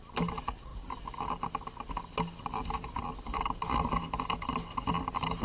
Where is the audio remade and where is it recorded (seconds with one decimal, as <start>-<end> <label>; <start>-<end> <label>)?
0.0-5.4 recorded